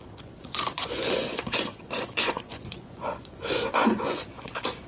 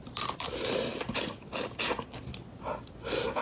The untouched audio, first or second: second